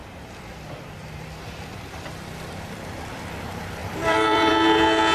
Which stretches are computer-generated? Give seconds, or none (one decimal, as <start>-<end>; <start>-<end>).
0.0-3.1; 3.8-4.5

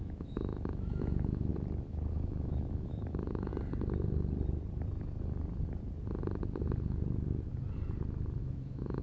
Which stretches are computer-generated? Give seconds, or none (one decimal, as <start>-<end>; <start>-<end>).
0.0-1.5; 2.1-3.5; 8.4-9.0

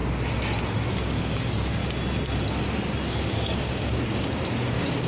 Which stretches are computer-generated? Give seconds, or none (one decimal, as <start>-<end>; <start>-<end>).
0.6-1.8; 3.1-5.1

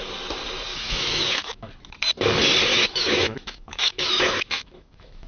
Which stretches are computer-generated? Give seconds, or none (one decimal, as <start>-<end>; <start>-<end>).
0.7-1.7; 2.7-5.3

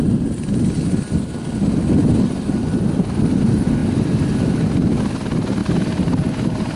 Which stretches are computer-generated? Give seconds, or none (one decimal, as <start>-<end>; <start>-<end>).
2.0-3.0; 5.6-6.8

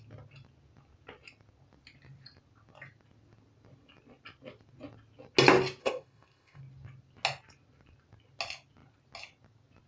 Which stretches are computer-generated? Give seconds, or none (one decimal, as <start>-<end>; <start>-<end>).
5.8-6.6